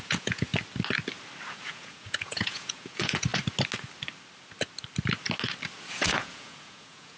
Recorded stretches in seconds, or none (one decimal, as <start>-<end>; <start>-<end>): 0.5-1.5; 3.3-5.9

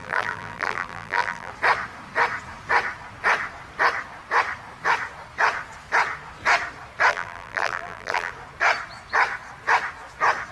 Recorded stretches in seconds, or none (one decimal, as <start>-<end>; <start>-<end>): 1.5-7.1; 8.3-10.5

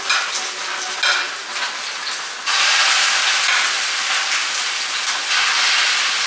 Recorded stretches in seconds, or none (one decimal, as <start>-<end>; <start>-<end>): 0.0-6.3

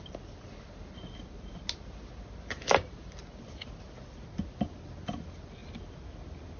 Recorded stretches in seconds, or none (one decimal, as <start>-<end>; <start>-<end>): 0.0-6.6

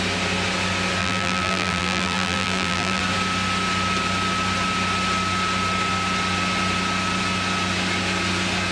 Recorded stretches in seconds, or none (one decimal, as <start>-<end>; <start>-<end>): 0.0-1.0; 3.0-8.7